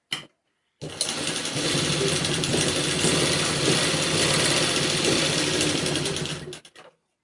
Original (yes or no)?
yes